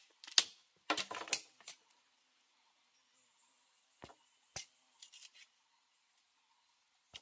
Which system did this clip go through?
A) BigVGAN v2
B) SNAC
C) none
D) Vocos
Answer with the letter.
C